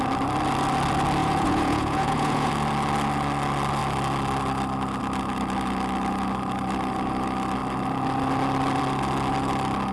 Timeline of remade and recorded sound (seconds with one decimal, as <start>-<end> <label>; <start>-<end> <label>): 0.0-1.2 recorded; 1.2-2.5 remade; 2.5-9.9 recorded